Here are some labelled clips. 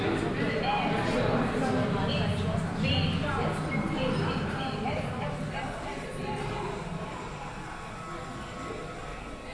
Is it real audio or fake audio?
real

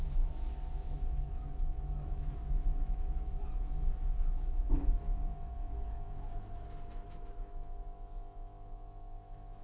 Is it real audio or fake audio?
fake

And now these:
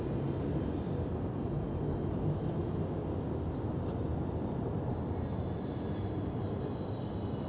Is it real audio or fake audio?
real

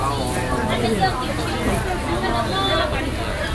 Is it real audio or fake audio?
real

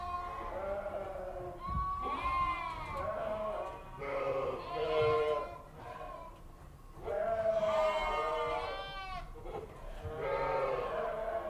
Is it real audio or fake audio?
real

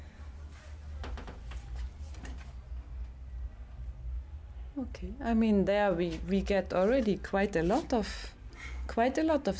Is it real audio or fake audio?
real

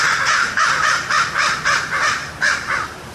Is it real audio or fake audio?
fake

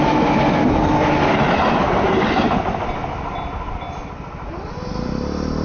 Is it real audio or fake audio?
real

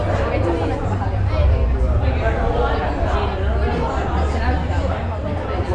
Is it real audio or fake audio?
real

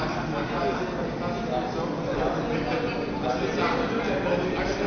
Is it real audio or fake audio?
real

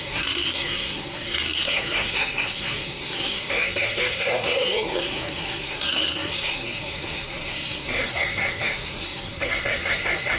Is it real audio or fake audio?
fake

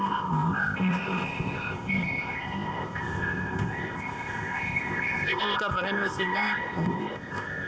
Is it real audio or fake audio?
fake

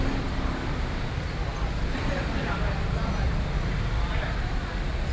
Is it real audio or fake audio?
fake